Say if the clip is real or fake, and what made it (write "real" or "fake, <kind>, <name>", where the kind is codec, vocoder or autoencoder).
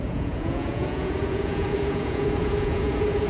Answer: fake, vocoder, Vocos